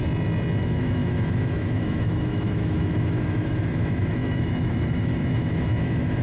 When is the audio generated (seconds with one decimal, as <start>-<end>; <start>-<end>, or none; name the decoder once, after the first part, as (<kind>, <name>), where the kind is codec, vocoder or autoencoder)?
0.6-6.2 (autoencoder, DAC-VAE)